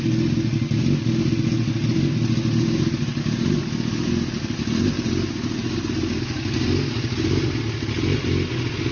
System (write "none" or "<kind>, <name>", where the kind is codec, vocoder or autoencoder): none